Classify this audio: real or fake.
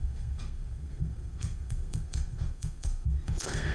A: fake